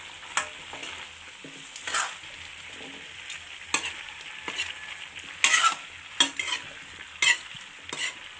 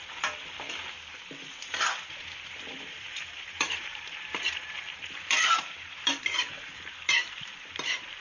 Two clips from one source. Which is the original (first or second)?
first